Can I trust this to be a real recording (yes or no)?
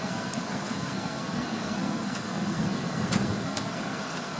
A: no